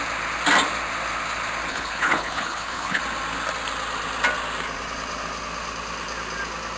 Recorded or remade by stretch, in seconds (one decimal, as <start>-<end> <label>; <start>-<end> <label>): 0.0-1.7 recorded; 1.7-3.0 remade; 3.0-6.8 recorded